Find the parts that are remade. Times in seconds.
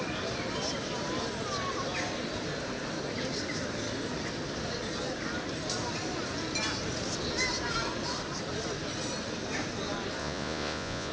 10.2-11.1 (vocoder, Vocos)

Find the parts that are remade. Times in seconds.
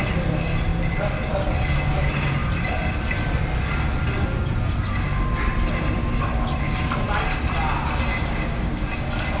8.1-8.8 (codec, DAC)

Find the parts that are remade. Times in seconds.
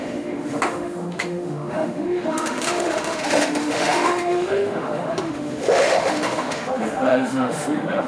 0.0-8.1 (autoencoder, DAC-VAE)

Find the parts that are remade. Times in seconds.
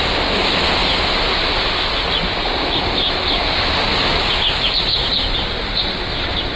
0.8-4.6 (vocoder, BigVGAN v2)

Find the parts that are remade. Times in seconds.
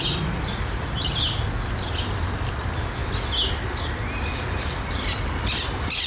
none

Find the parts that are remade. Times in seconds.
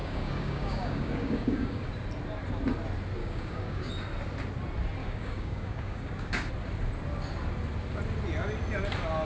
0.0-1.9 (codec, DAC); 3.2-3.9; 5.0-6.5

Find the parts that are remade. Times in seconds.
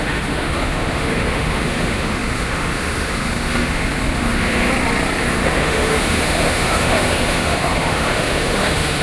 0.0-4.7 (autoencoder, DAC-VAE); 5.3-9.0